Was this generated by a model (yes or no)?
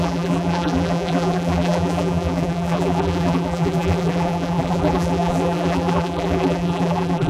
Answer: yes